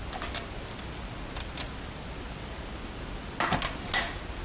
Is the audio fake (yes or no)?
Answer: no